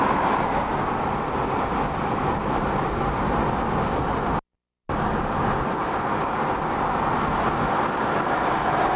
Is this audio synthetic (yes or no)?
no